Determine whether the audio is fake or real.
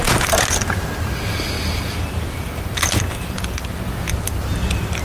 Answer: real